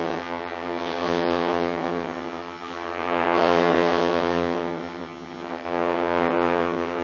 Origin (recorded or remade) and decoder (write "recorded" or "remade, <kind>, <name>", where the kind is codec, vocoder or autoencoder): remade, vocoder, HiFi-GAN